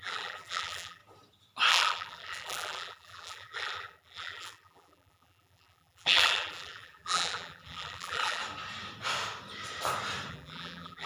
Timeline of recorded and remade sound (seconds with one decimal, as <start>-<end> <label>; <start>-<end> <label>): 0.0-1.0 remade; 1.0-1.7 recorded; 1.7-8.4 remade; 8.4-10.3 recorded; 10.3-11.1 remade